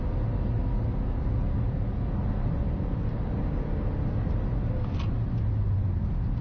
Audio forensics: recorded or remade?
recorded